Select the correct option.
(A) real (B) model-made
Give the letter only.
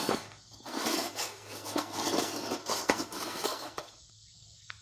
B